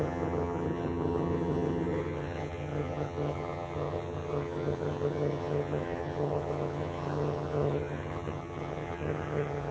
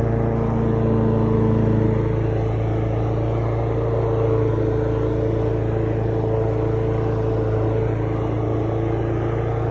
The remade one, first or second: first